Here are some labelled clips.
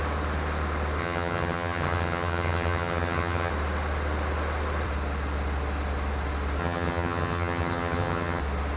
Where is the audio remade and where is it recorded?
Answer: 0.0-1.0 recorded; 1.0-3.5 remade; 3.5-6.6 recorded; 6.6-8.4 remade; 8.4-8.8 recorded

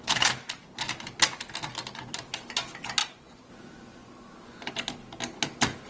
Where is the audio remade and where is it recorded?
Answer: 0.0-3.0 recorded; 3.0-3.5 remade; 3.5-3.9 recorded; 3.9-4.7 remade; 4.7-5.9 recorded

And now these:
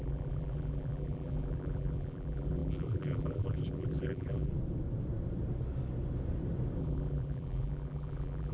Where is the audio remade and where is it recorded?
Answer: 0.0-4.5 remade; 4.5-6.8 recorded; 6.8-8.5 remade